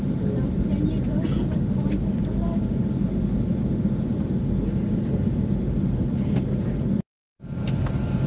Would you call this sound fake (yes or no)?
no